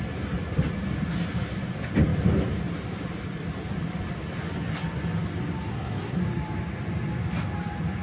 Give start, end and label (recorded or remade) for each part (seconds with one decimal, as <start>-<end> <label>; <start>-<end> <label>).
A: 0.0-5.7 recorded; 5.7-6.2 remade; 6.2-8.0 recorded